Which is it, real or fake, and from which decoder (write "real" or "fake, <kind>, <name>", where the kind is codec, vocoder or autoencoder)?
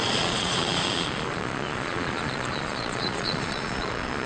fake, vocoder, Vocos